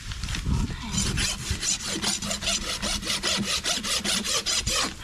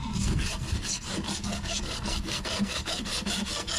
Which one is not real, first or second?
second